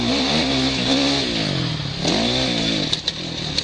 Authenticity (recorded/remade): recorded